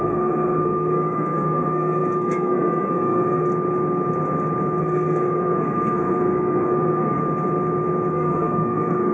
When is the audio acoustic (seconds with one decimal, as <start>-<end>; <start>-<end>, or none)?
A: 3.5-4.8; 7.2-8.1